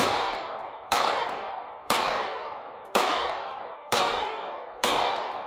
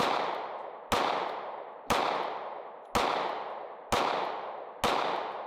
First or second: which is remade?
first